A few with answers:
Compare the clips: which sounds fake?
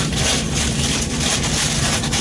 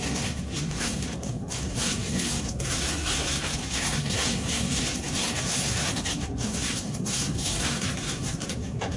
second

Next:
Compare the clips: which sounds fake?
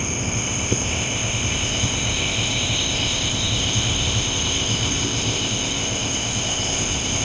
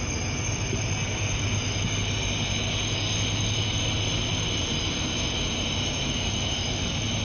first